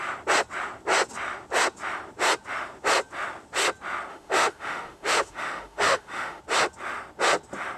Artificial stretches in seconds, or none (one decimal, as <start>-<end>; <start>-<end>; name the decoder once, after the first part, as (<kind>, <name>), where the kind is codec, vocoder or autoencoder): 4.1-6.4 (autoencoder, DAC-VAE)